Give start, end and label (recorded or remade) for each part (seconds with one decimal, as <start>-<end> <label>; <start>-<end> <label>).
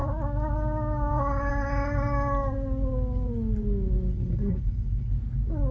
0.0-4.1 recorded; 4.1-5.1 remade; 5.1-5.7 recorded